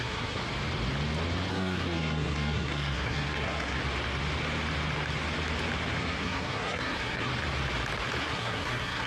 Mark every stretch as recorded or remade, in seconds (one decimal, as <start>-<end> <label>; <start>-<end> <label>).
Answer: 0.0-0.4 remade; 0.4-1.5 recorded; 1.5-3.8 remade; 3.8-6.0 recorded; 6.0-7.3 remade; 7.3-8.2 recorded; 8.2-9.1 remade